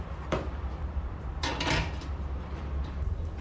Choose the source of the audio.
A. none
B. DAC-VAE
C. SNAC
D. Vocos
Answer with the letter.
A